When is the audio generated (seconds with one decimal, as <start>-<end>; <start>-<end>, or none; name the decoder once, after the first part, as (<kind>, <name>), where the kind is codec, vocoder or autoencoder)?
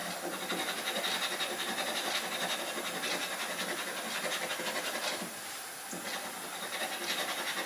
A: none